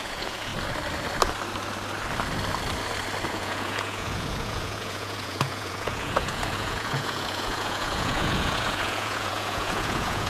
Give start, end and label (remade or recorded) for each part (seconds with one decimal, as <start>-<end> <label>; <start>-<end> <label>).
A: 0.0-0.5 remade; 0.5-3.3 recorded; 3.3-10.3 remade